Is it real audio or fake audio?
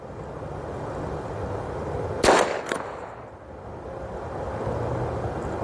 real